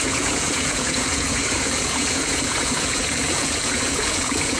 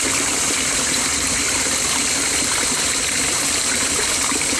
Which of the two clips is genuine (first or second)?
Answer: second